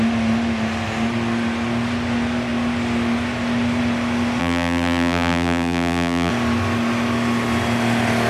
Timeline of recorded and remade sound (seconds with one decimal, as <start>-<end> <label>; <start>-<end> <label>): 0.0-4.4 recorded; 4.4-6.3 remade; 6.3-8.3 recorded